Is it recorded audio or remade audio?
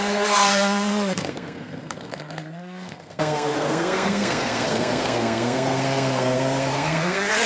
remade